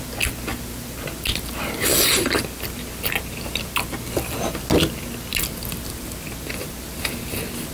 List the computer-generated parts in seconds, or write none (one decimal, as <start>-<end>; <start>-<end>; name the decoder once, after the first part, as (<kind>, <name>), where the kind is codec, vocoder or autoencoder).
none